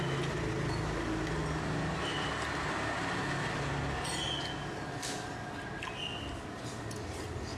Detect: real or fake real